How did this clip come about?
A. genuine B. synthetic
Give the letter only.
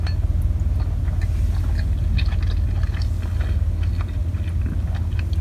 A